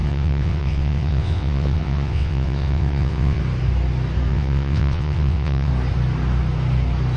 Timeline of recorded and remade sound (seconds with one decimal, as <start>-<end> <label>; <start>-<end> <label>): 0.0-3.4 remade; 3.4-4.3 recorded; 4.3-5.7 remade; 5.7-7.2 recorded